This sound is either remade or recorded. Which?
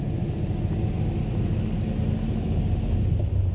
recorded